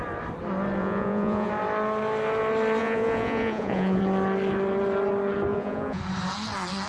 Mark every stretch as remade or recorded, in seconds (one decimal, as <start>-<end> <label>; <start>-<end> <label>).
0.0-0.8 recorded; 0.8-1.5 remade; 1.5-2.8 recorded; 2.8-4.0 remade; 4.0-5.5 recorded; 5.5-6.0 remade; 6.0-6.9 recorded